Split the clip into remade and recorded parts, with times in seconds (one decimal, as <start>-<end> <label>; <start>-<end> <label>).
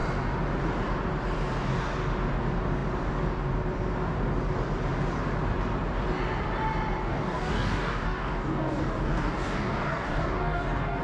0.0-7.0 recorded; 7.0-11.0 remade